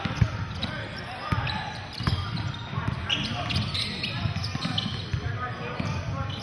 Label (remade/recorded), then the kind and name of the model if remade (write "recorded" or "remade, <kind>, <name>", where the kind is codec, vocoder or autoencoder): recorded